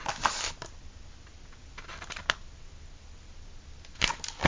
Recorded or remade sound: recorded